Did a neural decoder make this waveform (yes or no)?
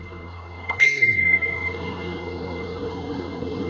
yes